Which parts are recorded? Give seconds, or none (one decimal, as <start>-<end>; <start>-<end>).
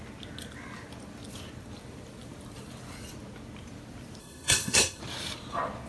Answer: 0.0-4.2; 5.0-5.9